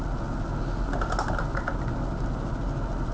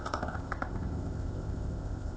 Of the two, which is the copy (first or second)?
second